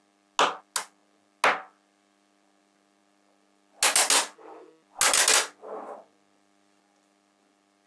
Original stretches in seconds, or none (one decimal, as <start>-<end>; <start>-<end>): 0.0-7.9